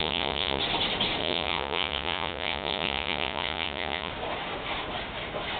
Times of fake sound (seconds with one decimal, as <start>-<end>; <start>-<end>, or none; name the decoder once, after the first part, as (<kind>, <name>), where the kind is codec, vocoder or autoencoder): 0.0-0.6 (vocoder, Vocos); 1.2-4.1